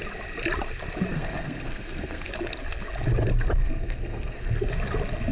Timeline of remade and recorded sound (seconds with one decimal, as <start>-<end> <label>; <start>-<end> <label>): 0.0-1.1 recorded; 1.1-2.3 remade; 2.3-3.6 recorded; 3.6-4.7 remade; 4.7-5.3 recorded